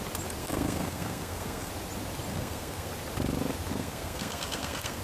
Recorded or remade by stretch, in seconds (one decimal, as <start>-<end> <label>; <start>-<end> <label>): 0.0-0.4 recorded; 0.4-1.7 remade; 1.7-2.3 recorded; 2.3-2.9 remade; 2.9-3.7 recorded; 3.7-5.0 remade